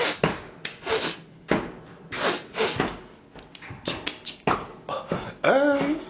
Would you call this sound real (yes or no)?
yes